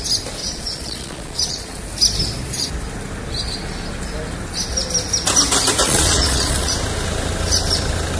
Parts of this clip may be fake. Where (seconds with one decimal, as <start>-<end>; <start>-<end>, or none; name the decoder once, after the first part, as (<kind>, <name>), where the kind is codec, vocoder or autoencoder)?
0.4-1.8 (vocoder, Vocos); 5.8-6.7